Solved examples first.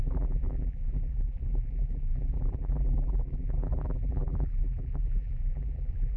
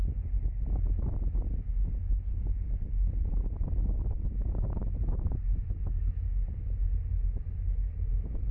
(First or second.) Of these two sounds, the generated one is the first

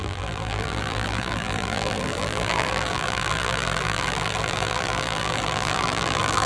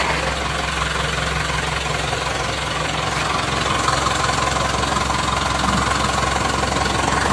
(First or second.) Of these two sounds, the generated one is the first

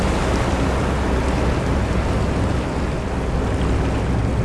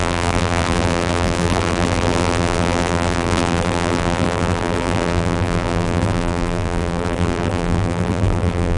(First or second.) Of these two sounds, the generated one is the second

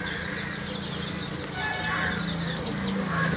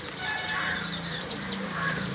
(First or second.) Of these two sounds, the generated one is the second